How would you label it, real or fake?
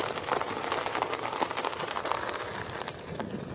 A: real